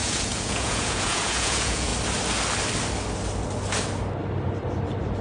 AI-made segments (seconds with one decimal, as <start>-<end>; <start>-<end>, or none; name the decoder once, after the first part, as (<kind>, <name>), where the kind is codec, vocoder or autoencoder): 0.0-1.9 (vocoder, Vocos)